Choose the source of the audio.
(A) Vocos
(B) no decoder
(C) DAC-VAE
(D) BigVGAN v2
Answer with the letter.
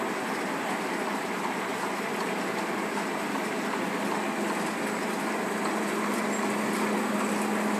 B